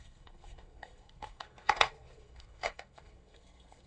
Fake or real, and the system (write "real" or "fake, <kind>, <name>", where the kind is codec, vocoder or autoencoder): fake, codec, SNAC